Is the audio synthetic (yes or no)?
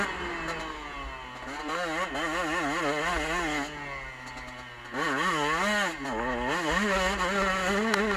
no